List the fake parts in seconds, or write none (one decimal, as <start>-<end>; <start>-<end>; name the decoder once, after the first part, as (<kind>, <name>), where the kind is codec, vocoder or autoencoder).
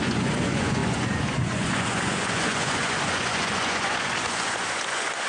0.0-5.3 (vocoder, Vocos)